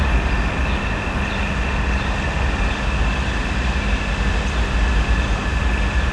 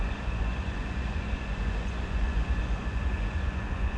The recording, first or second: first